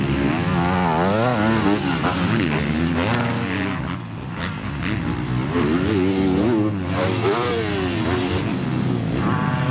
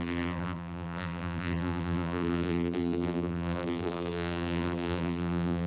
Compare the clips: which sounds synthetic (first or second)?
second